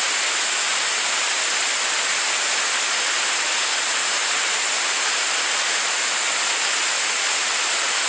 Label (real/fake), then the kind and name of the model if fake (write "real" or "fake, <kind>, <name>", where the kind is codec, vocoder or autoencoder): real